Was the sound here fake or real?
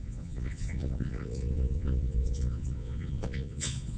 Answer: fake